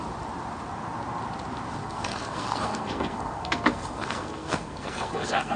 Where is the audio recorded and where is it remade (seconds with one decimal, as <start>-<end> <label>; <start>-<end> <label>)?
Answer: 0.0-1.8 recorded; 1.8-5.6 remade